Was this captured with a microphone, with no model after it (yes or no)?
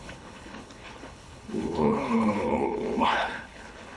no